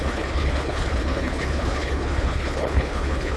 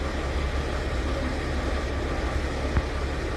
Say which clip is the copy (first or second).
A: first